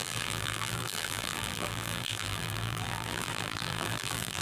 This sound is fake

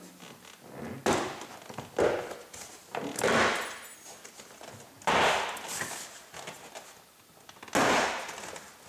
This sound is real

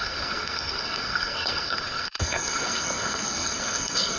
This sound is fake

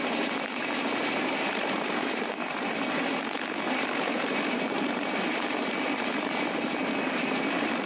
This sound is real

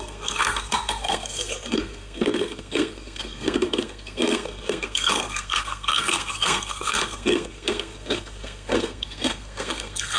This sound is fake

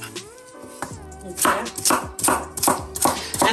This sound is fake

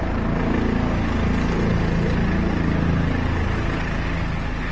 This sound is real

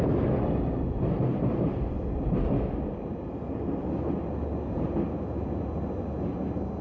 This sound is real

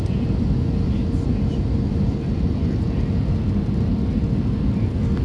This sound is real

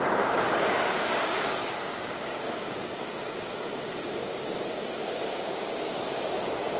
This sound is fake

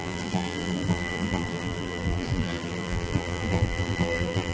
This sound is fake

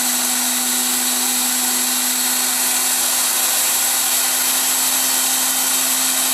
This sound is real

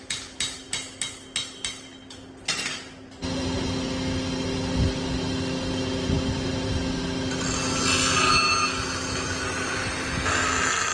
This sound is real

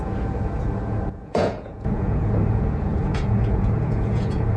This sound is fake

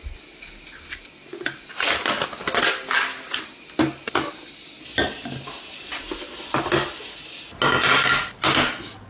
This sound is real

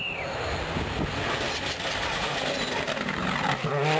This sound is real